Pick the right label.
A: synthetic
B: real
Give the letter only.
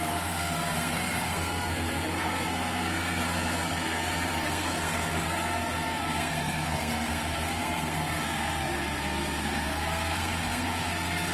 A